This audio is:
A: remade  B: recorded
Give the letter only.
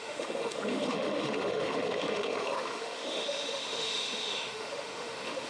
A